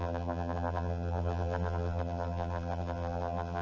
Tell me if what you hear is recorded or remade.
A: remade